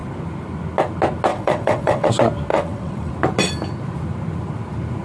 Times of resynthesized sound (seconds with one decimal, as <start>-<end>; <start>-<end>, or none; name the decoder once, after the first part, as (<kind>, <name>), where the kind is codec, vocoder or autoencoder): 1.3-2.1 (vocoder, WaveNeXt); 2.5-3.1